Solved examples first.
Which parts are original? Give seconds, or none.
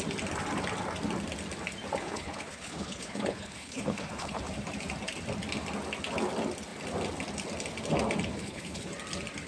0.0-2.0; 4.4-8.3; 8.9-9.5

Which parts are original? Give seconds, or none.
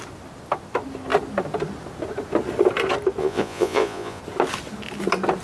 0.0-3.2; 4.2-5.4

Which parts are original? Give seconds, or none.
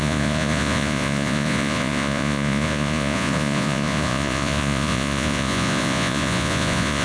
none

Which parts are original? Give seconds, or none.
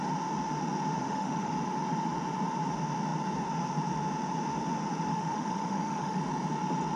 0.0-1.0; 1.5-5.1; 6.2-7.0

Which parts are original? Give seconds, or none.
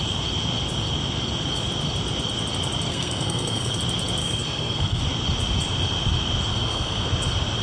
0.0-2.9; 3.8-4.2; 5.0-6.5; 7.1-7.6